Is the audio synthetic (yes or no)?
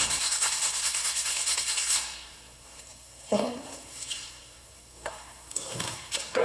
yes